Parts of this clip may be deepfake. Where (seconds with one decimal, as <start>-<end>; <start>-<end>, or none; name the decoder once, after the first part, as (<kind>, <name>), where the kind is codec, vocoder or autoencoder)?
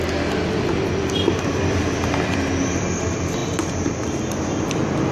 none